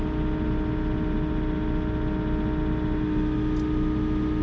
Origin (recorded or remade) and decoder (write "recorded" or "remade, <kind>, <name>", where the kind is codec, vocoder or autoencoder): recorded